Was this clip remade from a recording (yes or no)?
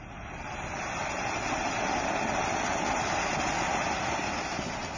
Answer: no